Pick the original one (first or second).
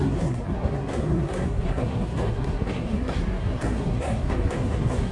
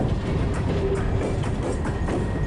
second